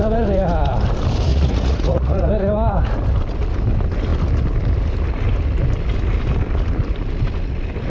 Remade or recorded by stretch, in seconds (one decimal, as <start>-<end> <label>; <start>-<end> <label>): 0.0-1.3 recorded; 1.3-2.3 remade; 2.3-7.9 recorded